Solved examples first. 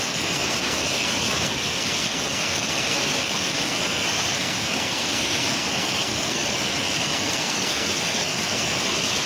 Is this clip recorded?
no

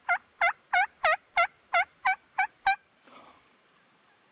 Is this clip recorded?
no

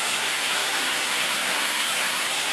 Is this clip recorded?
no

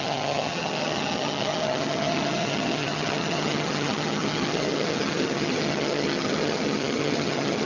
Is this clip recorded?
no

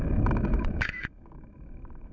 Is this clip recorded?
no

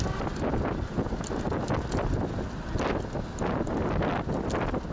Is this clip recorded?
yes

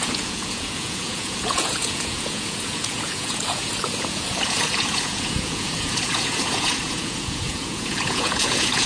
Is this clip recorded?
no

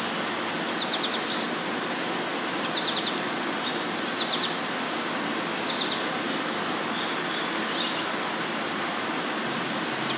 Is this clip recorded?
yes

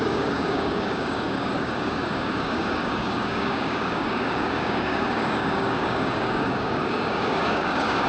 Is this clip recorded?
no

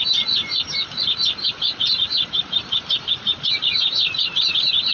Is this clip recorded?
no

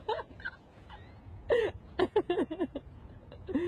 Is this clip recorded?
no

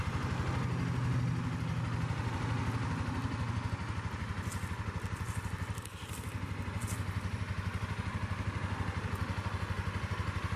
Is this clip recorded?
yes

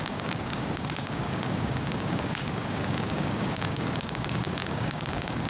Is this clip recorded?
no